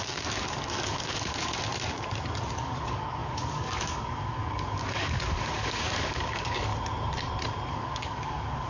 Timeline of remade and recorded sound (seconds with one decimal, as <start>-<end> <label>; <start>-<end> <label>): 0.0-1.7 remade; 1.7-2.5 recorded; 2.5-6.7 remade; 6.7-7.7 recorded; 7.7-8.7 remade